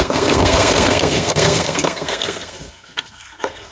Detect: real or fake fake